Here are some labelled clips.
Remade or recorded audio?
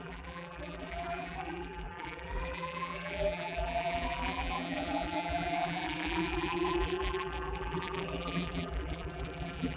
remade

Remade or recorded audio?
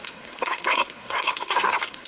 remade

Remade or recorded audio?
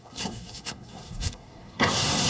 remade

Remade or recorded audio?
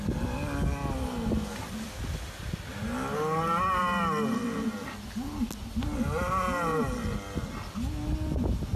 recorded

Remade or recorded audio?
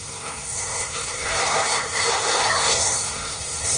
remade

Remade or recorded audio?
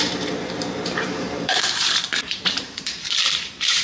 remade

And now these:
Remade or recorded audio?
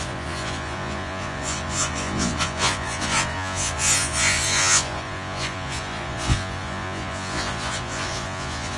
remade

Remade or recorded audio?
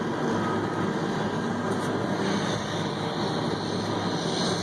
recorded